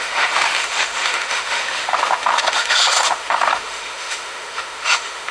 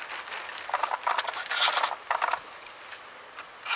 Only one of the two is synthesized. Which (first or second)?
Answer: first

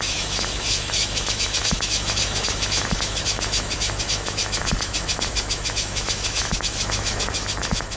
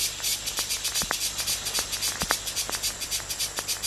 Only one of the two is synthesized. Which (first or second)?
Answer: first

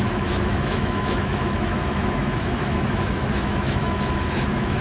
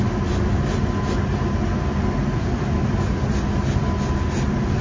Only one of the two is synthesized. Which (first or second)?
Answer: first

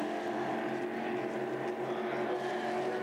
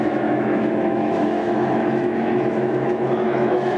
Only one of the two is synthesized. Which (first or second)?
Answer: second